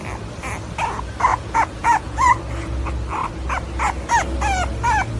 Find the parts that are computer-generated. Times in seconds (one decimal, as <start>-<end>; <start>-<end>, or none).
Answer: 1.3-2.4